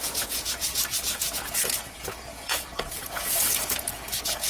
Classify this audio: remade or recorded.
remade